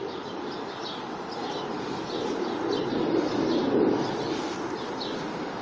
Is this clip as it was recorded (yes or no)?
yes